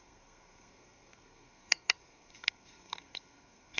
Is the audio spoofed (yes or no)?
yes